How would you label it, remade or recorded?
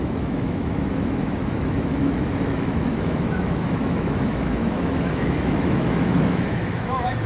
remade